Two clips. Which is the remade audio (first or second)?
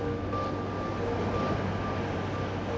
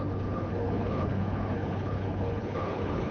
second